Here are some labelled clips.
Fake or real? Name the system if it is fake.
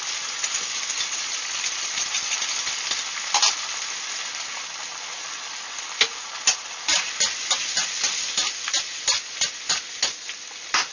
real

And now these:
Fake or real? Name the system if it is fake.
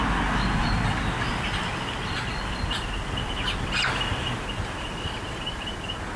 real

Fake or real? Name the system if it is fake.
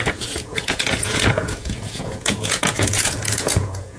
fake, vocoder, Vocos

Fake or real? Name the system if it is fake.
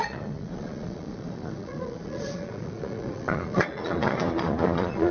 fake, vocoder, Vocos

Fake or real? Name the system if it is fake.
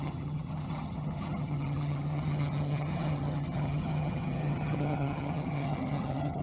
fake, vocoder, HiFi-GAN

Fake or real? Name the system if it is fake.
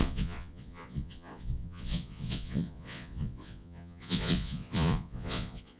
fake, vocoder, Vocos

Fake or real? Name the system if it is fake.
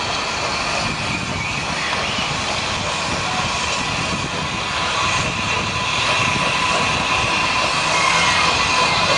real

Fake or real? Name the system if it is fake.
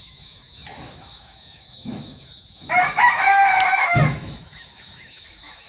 fake, autoencoder, DAC-VAE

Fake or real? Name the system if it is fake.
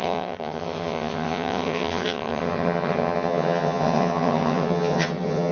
fake, vocoder, HiFi-GAN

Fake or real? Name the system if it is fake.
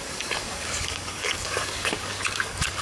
fake, codec, DAC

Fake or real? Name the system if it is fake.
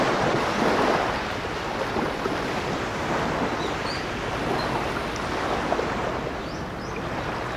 real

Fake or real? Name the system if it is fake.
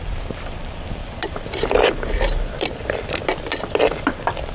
fake, vocoder, BigVGAN v2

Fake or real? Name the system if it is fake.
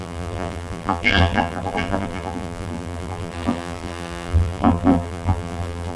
fake, vocoder, BigVGAN v2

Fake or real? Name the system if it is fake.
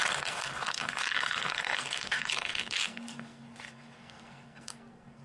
fake, codec, SNAC